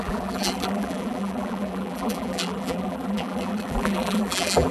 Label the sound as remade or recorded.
remade